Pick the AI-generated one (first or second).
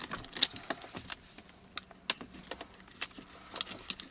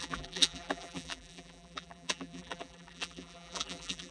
second